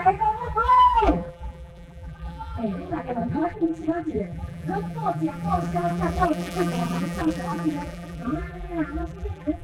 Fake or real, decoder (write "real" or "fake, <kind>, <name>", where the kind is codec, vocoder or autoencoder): fake, vocoder, BigVGAN v2